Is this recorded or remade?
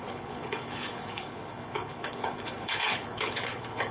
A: remade